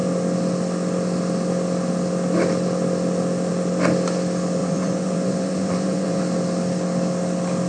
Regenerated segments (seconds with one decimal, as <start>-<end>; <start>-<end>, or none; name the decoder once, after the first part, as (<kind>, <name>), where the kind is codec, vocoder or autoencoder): 4.6-6.2 (vocoder, Vocos)